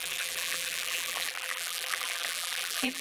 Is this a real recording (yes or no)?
no